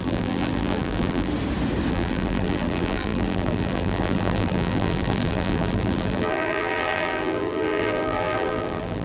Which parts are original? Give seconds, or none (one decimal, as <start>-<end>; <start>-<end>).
1.3-1.9